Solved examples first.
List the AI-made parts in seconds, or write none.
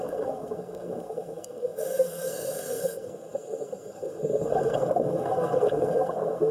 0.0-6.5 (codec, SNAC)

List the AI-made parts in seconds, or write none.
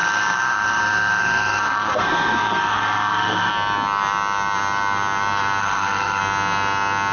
0.0-3.5 (codec, SNAC); 5.6-6.2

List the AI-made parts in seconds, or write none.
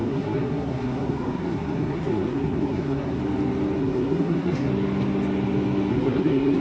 0.0-3.2 (codec, SNAC); 3.8-4.7; 5.9-6.6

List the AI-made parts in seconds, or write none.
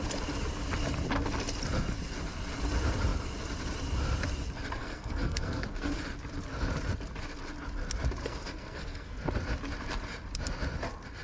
4.8-6.0 (codec, SNAC); 8.2-9.3